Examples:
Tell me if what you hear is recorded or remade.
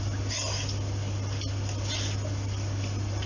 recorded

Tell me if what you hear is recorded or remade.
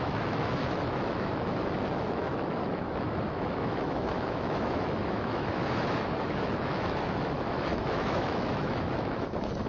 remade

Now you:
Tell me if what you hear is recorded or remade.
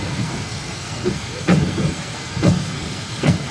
remade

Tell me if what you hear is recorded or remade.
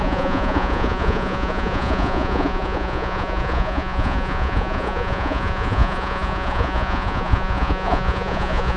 remade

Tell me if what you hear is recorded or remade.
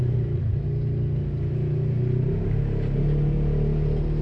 recorded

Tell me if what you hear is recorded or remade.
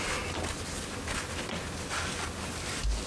recorded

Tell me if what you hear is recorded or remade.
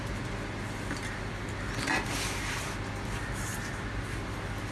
recorded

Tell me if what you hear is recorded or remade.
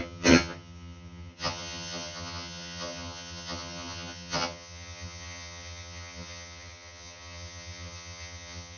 remade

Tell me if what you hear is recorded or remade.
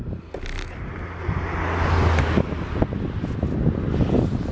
recorded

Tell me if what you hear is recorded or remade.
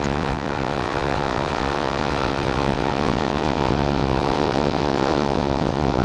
remade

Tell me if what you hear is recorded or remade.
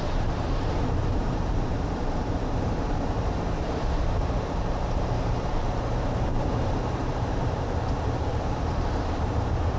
remade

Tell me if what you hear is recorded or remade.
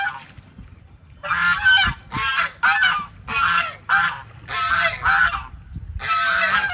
recorded